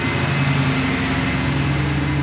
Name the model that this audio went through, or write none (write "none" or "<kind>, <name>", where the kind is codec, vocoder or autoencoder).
none